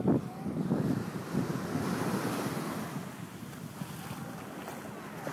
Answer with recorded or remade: recorded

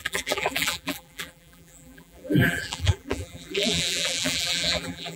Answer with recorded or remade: remade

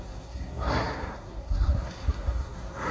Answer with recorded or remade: remade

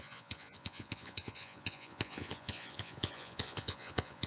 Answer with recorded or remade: remade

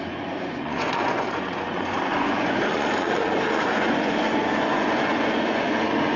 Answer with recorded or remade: remade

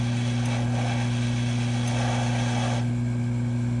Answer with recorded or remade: recorded